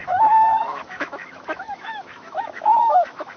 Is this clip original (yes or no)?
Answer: no